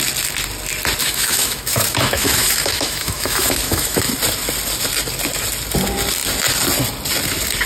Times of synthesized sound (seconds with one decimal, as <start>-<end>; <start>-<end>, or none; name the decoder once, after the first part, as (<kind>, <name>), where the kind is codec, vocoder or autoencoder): 1.0-4.1 (autoencoder, DAC-VAE)